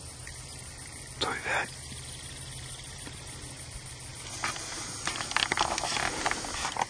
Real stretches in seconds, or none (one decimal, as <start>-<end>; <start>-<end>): 0.0-6.9